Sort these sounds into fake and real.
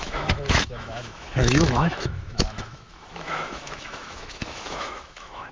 fake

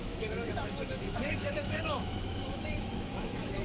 fake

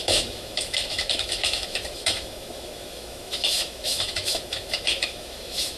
fake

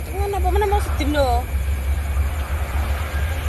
real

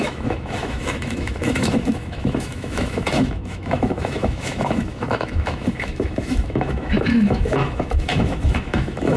fake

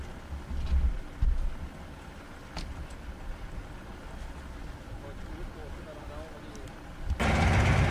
real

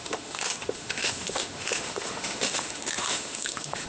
fake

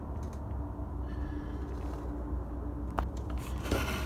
real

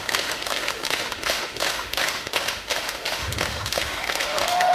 fake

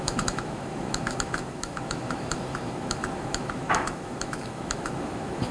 fake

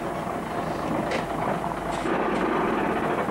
real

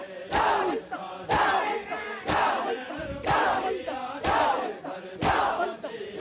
real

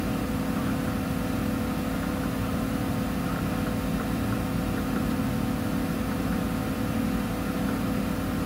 real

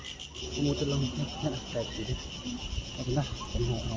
real